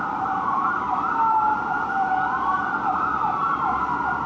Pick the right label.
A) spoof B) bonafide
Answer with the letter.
A